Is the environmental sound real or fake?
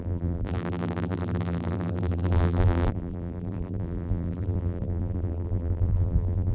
fake